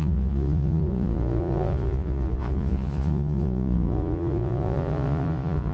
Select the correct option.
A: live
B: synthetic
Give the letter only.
B